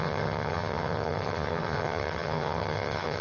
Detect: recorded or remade remade